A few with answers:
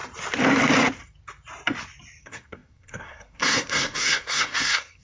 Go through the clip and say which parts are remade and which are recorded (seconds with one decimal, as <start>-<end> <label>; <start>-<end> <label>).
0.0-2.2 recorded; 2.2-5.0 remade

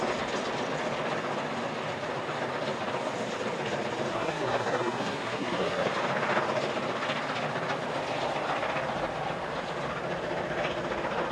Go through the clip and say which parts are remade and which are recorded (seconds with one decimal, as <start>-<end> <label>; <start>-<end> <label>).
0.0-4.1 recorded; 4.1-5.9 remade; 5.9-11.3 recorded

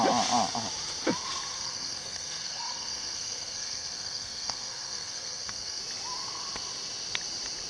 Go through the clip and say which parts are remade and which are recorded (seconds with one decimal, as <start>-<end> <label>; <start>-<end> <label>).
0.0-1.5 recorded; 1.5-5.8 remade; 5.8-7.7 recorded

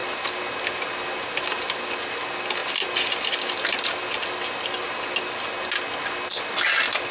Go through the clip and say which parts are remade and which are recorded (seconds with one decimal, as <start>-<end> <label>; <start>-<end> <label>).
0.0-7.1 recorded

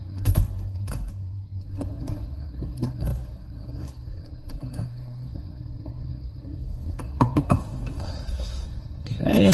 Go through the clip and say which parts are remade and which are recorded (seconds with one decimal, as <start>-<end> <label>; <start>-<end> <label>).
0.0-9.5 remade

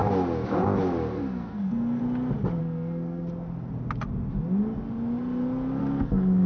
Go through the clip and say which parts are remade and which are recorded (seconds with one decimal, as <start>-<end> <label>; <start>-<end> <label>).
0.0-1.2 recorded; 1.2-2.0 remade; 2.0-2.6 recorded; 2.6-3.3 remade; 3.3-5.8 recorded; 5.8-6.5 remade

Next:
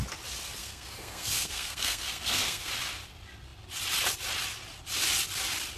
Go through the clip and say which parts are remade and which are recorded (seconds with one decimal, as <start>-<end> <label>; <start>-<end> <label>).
0.0-0.6 recorded; 0.6-2.7 remade; 2.7-5.8 recorded

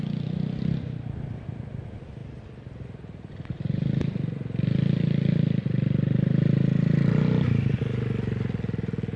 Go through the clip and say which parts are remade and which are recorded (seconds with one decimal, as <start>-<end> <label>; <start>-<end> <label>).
0.0-9.2 recorded